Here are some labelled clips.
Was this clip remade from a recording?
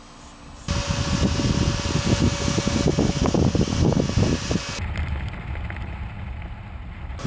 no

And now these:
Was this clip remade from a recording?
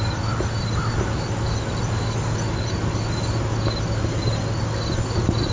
no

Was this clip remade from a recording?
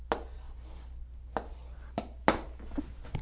no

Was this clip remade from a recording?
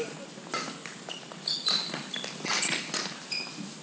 no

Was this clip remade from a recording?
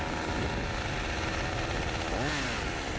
no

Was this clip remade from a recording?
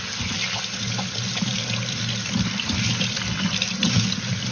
no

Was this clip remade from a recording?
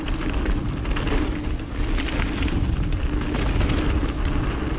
no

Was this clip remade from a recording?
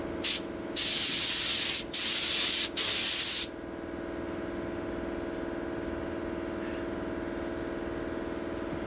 no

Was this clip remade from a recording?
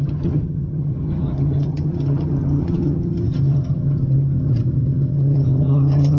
yes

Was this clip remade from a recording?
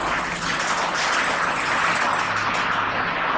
no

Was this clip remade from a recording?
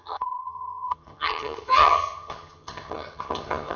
yes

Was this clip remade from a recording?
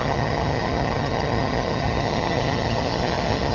yes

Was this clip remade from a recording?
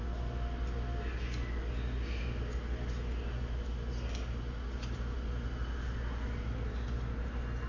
no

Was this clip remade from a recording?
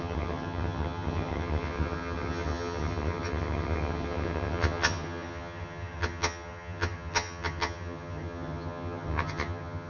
yes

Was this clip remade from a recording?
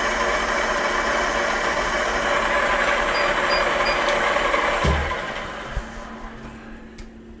no